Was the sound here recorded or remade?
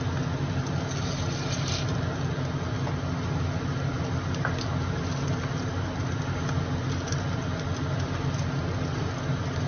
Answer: recorded